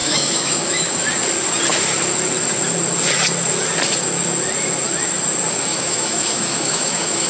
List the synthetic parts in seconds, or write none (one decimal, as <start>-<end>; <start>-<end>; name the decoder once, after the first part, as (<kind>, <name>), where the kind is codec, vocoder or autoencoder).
0.0-1.0 (autoencoder, DAC-VAE); 5.7-7.3